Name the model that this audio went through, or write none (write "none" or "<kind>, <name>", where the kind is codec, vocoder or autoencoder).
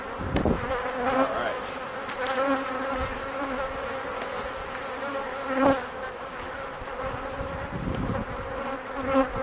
none